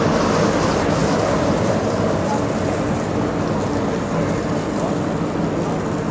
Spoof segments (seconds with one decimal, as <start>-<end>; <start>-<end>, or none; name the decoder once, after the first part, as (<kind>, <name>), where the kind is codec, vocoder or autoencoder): 1.0-2.2 (vocoder, BigVGAN v2)